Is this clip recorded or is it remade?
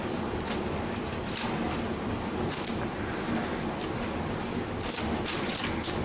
recorded